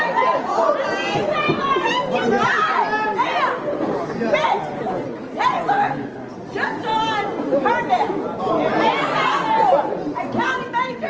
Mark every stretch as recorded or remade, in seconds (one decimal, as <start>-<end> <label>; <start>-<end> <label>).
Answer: 0.0-11.1 recorded